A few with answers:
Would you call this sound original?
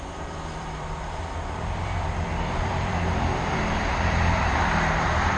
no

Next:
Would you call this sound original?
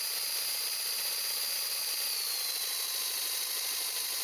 yes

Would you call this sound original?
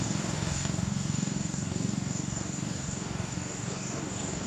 no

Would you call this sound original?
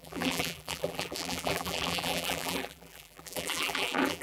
no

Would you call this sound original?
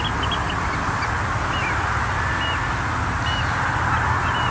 yes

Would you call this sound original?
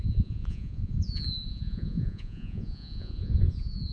no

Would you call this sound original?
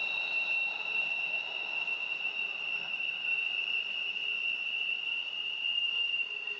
no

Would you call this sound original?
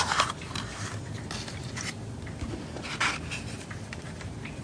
no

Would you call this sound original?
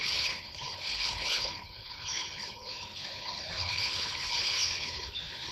no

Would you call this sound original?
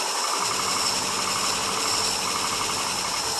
yes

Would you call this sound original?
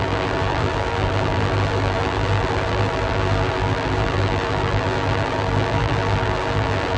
no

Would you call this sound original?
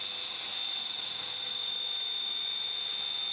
yes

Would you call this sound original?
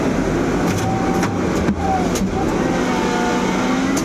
yes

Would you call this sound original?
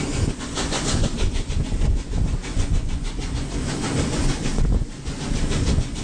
no